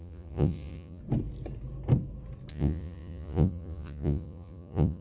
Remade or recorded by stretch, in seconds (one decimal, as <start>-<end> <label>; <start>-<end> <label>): 0.0-1.0 remade; 1.0-2.5 recorded; 2.5-5.0 remade